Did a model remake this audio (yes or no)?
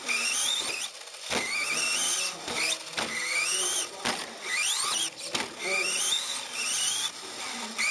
no